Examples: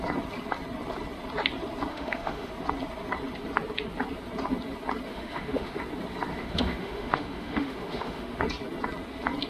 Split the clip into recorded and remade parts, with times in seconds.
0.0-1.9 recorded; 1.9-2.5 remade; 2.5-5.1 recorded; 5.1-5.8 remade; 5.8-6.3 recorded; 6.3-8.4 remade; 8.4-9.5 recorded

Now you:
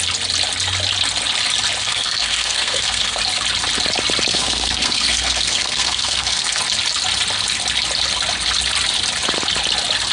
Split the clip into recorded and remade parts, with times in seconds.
0.0-1.8 recorded; 1.8-3.2 remade; 3.2-4.3 recorded; 4.3-6.6 remade; 6.6-10.1 recorded

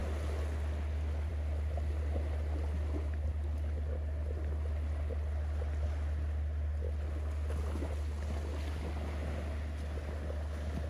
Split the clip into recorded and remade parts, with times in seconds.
0.0-10.9 recorded

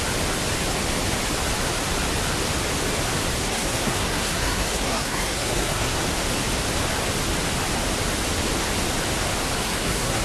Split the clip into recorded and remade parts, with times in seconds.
0.0-3.4 recorded; 3.4-6.0 remade; 6.0-9.6 recorded; 9.6-10.2 remade

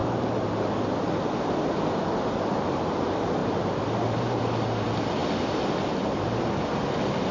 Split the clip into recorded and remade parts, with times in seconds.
0.0-1.1 remade; 1.1-3.4 recorded; 3.4-4.4 remade; 4.4-7.3 recorded

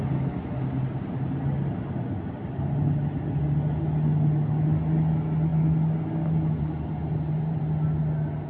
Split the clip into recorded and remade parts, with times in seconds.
0.0-7.0 recorded; 7.0-7.6 remade; 7.6-8.5 recorded

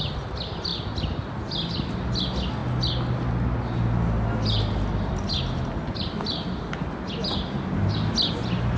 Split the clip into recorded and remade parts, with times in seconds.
0.0-8.8 recorded

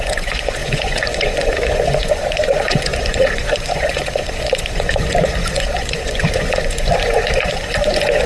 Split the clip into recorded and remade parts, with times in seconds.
0.0-8.3 remade